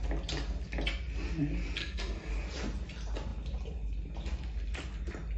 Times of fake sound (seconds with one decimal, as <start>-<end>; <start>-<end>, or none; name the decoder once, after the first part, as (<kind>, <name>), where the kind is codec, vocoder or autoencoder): 1.8-2.3 (codec, SNAC)